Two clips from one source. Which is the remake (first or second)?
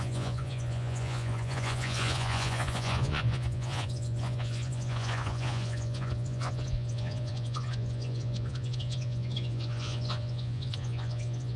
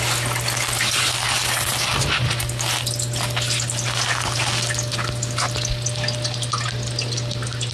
first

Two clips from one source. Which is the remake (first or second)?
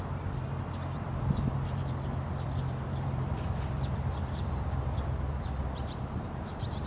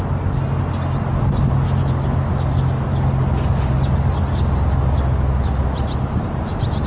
first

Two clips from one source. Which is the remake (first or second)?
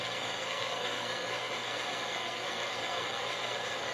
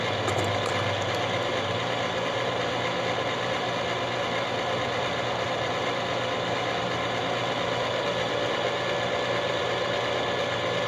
first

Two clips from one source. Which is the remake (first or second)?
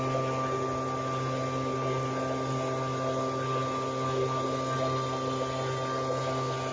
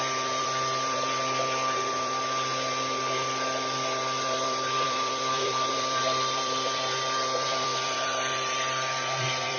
second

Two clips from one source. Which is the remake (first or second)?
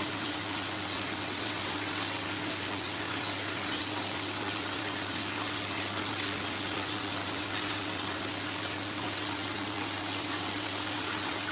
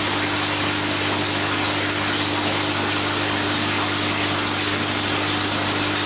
first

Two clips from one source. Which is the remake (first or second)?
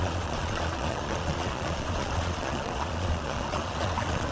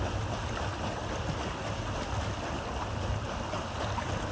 first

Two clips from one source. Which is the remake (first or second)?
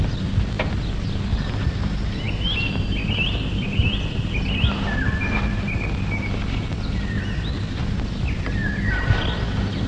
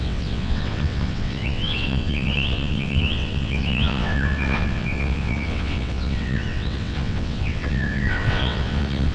second